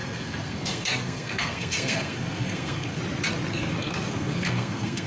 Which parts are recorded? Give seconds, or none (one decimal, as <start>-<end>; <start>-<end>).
3.0-3.5

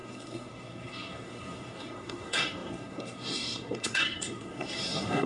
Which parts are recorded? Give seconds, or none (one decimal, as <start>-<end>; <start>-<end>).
none

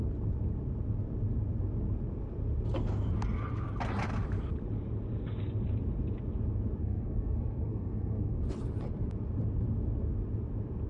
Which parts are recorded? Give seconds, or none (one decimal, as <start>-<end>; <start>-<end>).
0.0-6.8; 8.4-10.9

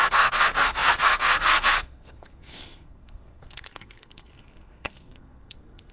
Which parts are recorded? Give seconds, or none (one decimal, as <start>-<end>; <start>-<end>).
none